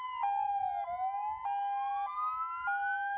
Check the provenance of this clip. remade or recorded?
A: recorded